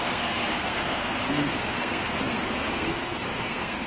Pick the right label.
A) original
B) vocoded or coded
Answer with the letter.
B